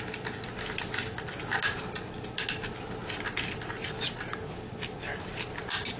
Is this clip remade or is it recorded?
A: recorded